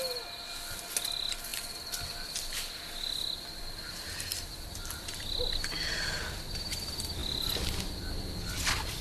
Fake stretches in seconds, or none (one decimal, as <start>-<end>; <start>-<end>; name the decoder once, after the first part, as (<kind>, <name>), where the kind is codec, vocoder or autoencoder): none